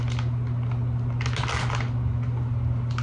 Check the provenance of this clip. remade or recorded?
recorded